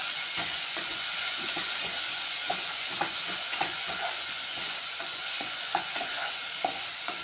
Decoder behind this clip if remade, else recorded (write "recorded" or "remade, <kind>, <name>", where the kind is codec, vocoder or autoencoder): remade, vocoder, Vocos